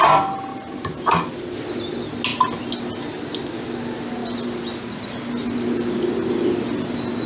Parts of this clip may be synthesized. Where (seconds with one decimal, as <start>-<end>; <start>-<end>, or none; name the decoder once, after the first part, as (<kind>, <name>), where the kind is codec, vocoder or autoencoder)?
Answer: 0.5-1.3 (vocoder, BigVGAN v2)